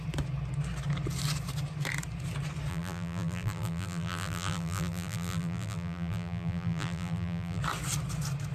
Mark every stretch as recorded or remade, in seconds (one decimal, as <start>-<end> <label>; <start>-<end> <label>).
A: 0.0-2.7 recorded; 2.7-7.6 remade; 7.6-8.5 recorded